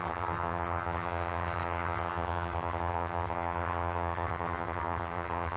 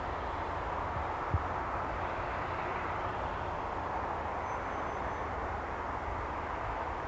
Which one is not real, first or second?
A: first